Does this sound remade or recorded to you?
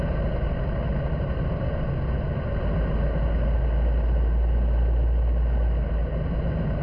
recorded